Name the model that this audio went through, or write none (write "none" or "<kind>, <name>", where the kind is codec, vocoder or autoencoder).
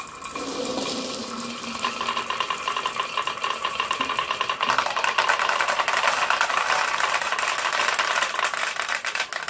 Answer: none